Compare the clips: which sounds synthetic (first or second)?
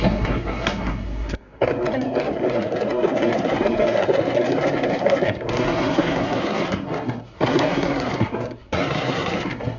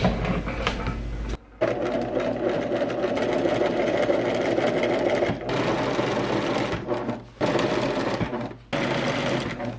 first